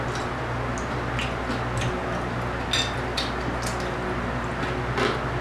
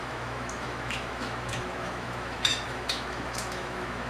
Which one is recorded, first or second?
first